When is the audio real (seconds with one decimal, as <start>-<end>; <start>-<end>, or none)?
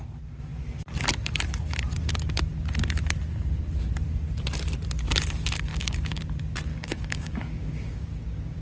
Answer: 0.0-5.7; 6.2-6.7